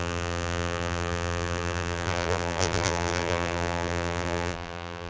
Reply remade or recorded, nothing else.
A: remade